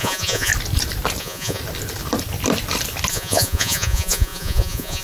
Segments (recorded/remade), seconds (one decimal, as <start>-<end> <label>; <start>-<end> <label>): 0.0-0.5 remade; 0.5-1.2 recorded; 1.2-1.6 remade; 1.6-3.1 recorded; 3.1-5.0 remade